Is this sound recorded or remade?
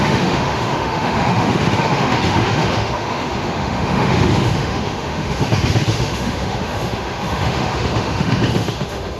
remade